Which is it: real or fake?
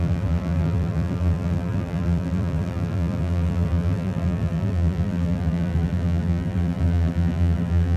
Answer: fake